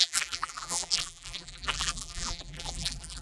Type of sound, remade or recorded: remade